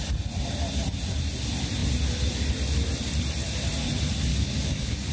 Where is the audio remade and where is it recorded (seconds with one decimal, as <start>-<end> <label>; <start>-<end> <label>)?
0.0-4.3 recorded; 4.3-5.1 remade

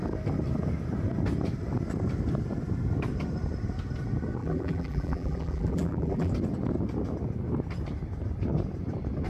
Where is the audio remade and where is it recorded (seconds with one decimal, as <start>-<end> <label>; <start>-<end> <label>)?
0.0-4.4 recorded; 4.4-6.3 remade; 6.3-9.3 recorded

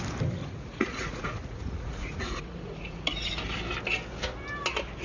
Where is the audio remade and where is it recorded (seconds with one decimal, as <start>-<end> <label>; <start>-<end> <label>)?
0.0-0.4 recorded; 0.4-3.4 remade; 3.4-5.0 recorded

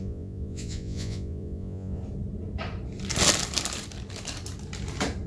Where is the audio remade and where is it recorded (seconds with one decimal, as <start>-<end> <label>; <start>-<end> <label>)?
0.0-2.0 remade; 2.0-5.3 recorded